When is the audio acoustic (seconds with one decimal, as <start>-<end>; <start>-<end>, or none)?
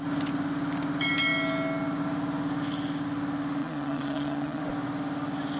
0.0-3.6; 4.6-5.6